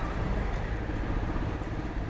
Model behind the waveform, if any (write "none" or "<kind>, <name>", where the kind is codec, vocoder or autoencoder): none